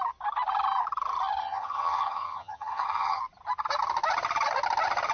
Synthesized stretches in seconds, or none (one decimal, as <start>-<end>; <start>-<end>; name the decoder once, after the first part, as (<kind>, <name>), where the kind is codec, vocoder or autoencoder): 1.4-3.2 (vocoder, HiFi-GAN)